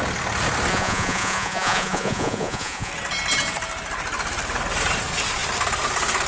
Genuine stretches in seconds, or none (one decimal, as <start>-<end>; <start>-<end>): 0.0-0.7; 2.9-6.3